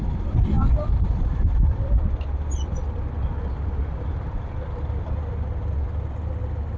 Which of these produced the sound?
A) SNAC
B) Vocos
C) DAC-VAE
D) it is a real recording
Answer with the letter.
D